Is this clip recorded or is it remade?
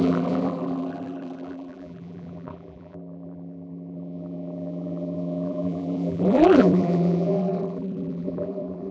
remade